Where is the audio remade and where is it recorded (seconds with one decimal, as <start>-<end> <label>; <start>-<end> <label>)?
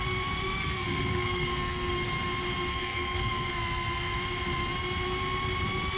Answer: 0.0-0.6 recorded; 0.6-1.9 remade; 1.9-2.7 recorded; 2.7-3.5 remade; 3.5-6.0 recorded